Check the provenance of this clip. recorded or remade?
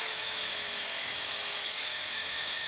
remade